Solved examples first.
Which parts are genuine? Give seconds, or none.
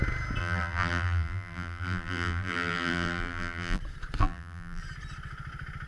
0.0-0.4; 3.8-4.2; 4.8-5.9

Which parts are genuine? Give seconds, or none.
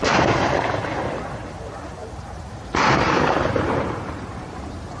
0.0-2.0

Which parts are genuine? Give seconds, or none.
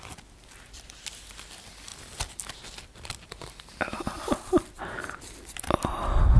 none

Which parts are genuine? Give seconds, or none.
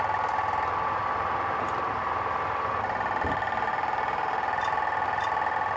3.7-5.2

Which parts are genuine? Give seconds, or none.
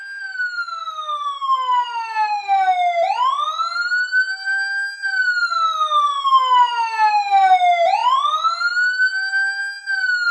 0.0-10.3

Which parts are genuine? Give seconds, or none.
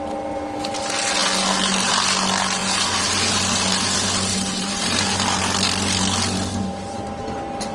0.0-4.3; 5.4-7.7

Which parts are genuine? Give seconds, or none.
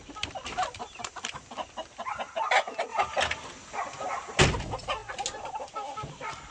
0.0-0.6; 1.5-2.9; 4.4-6.5